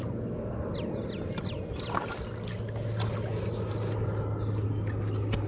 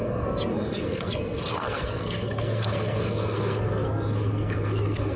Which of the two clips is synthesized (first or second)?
second